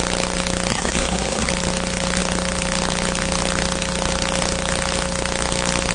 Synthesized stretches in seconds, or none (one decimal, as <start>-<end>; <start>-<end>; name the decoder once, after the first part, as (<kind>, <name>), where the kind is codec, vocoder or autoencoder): 0.7-1.5 (codec, SNAC)